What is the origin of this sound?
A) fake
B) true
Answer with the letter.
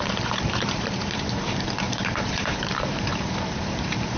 A